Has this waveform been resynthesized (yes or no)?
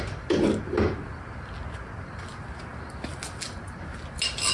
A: no